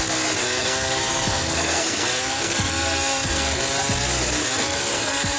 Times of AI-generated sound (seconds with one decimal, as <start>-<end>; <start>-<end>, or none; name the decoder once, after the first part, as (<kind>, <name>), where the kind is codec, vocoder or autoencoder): 0.4-3.6 (codec, SNAC); 4.4-5.4